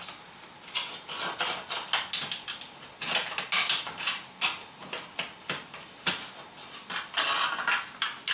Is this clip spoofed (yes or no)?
no